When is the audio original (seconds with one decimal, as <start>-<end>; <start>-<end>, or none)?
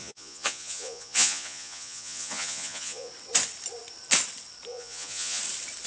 3.1-4.7; 5.4-5.9